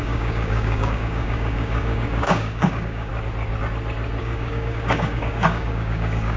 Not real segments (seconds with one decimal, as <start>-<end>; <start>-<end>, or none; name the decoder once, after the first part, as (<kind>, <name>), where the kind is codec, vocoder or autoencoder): 0.0-3.1 (codec, DAC); 4.2-6.4